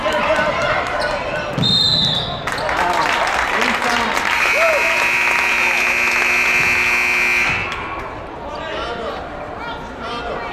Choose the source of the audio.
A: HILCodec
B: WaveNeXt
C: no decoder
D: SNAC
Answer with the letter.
C